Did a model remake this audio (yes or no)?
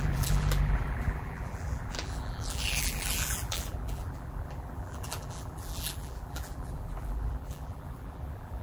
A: yes